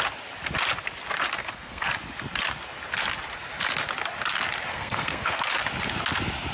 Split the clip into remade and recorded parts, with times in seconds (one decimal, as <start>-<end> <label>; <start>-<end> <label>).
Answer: 0.0-1.4 recorded; 1.4-1.9 remade; 1.9-4.7 recorded; 4.7-5.4 remade; 5.4-6.5 recorded